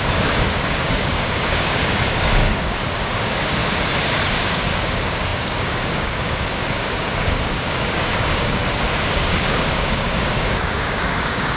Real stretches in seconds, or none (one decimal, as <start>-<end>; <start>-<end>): 3.6-4.3; 8.6-9.1